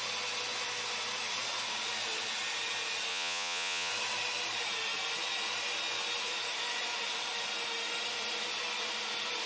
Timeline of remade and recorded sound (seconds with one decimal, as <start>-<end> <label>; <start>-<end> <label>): 0.0-3.1 recorded; 3.1-3.9 remade; 3.9-9.5 recorded